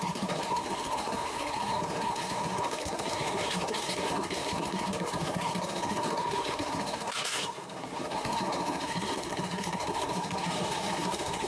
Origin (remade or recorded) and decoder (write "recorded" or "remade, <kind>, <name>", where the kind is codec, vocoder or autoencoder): remade, codec, SNAC